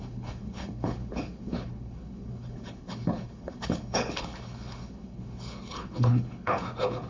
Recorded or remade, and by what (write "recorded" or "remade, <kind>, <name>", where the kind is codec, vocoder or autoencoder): remade, codec, HILCodec